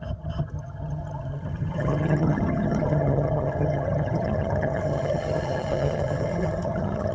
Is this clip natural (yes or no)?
no